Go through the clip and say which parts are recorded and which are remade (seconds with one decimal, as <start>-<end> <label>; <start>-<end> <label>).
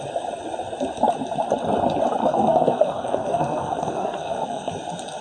0.0-2.2 recorded; 2.2-4.7 remade; 4.7-5.2 recorded